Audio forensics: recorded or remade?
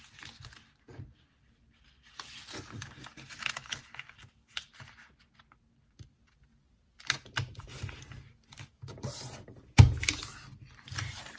recorded